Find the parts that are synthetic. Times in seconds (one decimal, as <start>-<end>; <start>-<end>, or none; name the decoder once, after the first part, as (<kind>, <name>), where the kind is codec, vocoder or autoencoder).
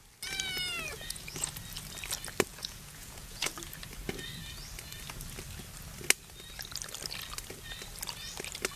0.9-1.5 (vocoder, Vocos); 2.5-3.5